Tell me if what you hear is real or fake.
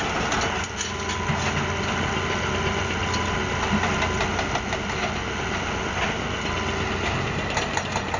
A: real